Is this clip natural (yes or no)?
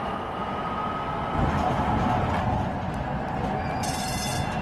yes